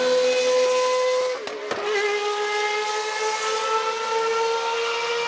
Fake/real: real